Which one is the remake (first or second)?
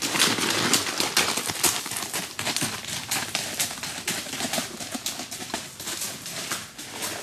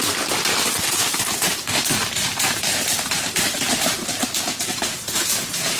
second